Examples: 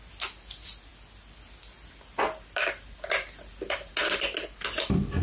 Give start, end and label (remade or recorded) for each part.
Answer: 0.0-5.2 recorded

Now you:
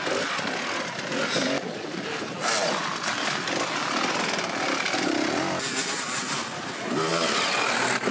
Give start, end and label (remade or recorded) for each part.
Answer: 0.0-8.1 recorded

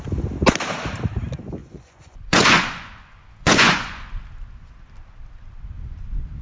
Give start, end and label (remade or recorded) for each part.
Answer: 0.0-1.6 recorded; 1.6-4.2 remade; 4.2-6.4 recorded

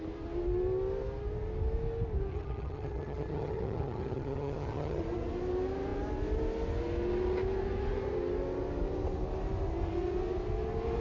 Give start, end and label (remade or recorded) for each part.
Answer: 0.0-2.3 recorded; 2.3-5.0 remade; 5.0-11.0 recorded